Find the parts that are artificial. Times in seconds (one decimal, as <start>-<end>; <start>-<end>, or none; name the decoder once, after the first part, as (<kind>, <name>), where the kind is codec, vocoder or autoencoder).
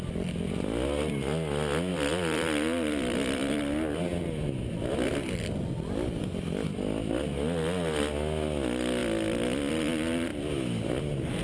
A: 1.9-4.9 (vocoder, BigVGAN v2)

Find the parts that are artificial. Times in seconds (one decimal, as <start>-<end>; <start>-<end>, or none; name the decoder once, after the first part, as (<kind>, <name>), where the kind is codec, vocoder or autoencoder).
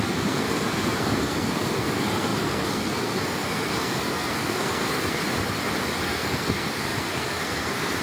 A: 0.0-5.2 (codec, SNAC); 6.0-8.0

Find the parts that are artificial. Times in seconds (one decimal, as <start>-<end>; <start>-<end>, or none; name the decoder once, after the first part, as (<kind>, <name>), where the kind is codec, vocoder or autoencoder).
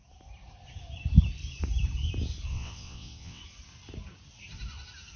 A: 2.5-3.4 (vocoder, WaveNeXt)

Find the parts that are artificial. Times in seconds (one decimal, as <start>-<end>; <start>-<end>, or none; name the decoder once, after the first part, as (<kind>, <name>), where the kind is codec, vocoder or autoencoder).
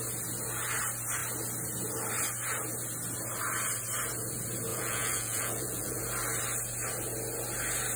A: 4.7-6.0 (vocoder, Vocos)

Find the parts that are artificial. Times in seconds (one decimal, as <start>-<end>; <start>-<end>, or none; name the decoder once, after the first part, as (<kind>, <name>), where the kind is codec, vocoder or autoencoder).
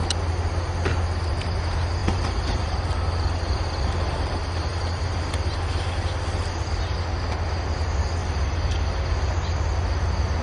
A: 2.0-6.6 (vocoder, BigVGAN v2); 8.2-9.3